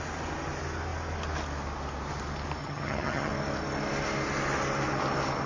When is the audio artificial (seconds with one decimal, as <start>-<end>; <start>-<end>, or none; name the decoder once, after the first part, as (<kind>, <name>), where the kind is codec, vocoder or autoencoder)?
2.6-3.3 (vocoder, HiFi-GAN)